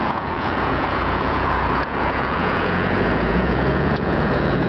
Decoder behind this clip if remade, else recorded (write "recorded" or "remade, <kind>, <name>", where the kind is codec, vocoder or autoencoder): remade, vocoder, Vocos